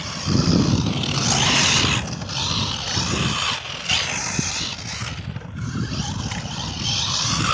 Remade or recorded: recorded